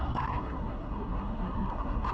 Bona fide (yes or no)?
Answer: no